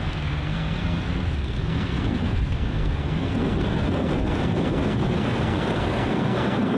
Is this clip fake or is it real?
fake